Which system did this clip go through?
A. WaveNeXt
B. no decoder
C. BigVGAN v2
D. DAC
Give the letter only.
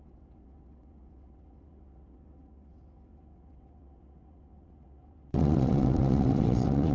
A